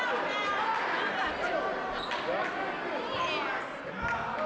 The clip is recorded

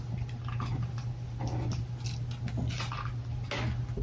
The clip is recorded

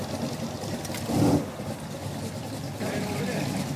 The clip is recorded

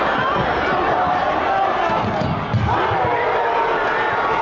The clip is recorded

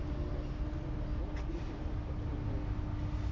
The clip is recorded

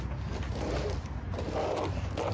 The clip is recorded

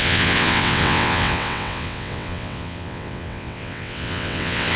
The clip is remade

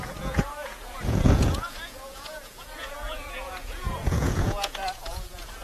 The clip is remade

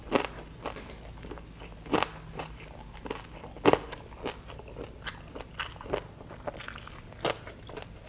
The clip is recorded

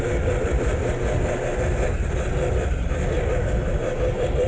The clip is recorded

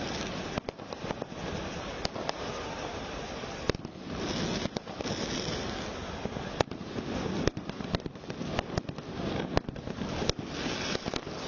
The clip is recorded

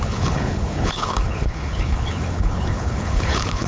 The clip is remade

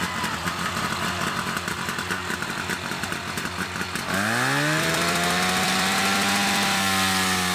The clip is remade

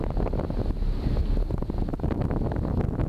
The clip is recorded